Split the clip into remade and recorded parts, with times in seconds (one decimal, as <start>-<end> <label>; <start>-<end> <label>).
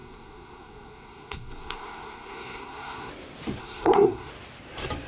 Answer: 0.0-3.1 remade; 3.1-3.6 recorded; 3.6-4.3 remade; 4.3-5.1 recorded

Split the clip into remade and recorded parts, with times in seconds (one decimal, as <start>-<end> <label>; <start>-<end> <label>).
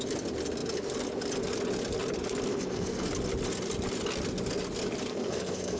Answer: 0.0-2.5 recorded; 2.5-3.1 remade; 3.1-5.1 recorded; 5.1-5.8 remade